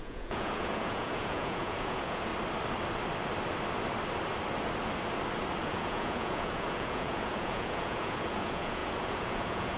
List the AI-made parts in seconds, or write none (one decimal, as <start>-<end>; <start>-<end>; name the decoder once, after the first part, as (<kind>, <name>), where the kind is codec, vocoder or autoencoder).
0.0-2.3 (vocoder, Vocos); 5.6-9.8